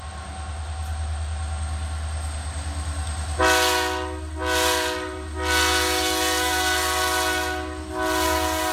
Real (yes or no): yes